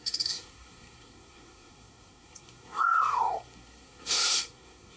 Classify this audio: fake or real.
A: fake